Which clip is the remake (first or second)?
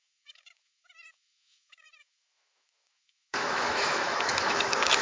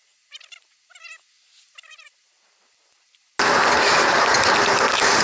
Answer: first